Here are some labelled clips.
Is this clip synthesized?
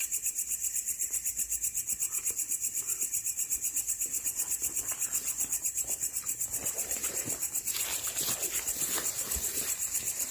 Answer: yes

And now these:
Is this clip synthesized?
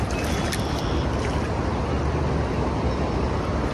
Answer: no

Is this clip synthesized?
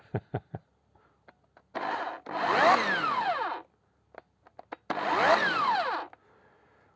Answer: no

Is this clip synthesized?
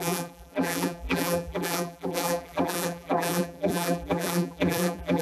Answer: yes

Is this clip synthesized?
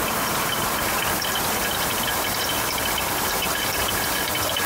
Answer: yes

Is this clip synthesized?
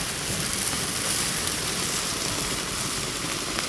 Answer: yes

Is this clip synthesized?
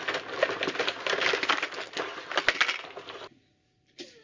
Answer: no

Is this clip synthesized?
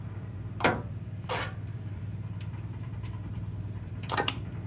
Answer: yes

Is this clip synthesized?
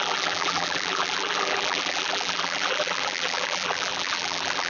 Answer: yes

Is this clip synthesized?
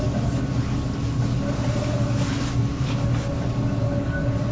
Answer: no